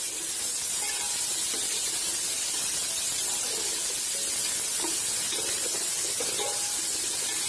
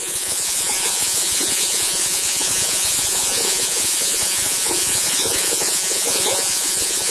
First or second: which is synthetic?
second